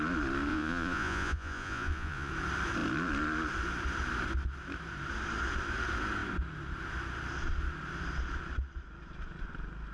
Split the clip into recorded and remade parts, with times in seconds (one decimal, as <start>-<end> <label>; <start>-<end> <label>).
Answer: 0.0-0.5 recorded; 0.5-2.3 remade; 2.3-9.9 recorded